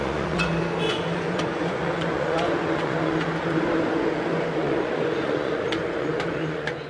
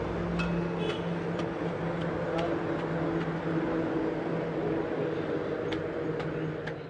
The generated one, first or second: first